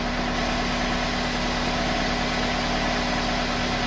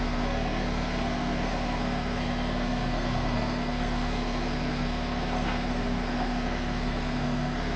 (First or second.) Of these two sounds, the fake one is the second